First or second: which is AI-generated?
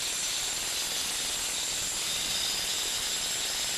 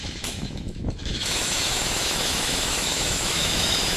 second